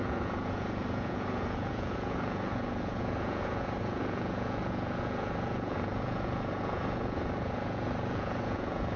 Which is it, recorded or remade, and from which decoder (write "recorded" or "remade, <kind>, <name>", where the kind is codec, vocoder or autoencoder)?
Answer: remade, vocoder, Vocos